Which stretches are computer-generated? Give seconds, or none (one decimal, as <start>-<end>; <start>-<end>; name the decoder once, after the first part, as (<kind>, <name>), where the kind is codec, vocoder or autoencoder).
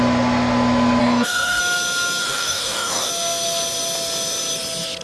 1.0-1.6 (codec, DAC); 2.2-3.1